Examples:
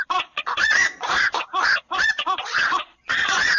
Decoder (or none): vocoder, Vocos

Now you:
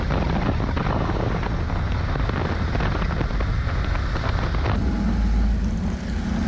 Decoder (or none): none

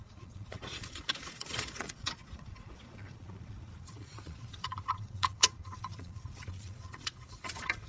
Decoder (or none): vocoder, Vocos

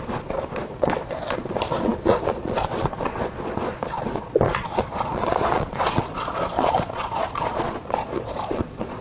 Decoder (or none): vocoder, Vocos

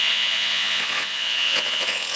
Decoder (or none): vocoder, Vocos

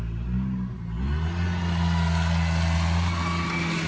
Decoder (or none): none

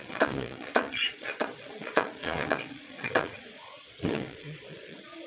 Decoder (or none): vocoder, Vocos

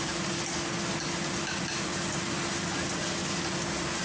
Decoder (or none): none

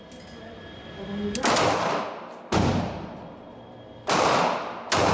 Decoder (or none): none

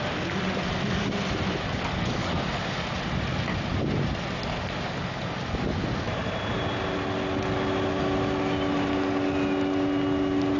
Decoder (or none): none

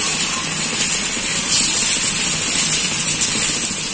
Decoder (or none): none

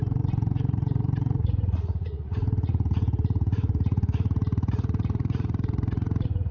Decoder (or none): vocoder, Vocos